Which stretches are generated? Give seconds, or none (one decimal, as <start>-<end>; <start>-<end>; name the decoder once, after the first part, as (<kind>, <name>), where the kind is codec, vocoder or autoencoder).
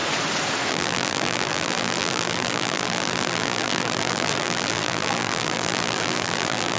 0.7-6.8 (vocoder, BigVGAN v2)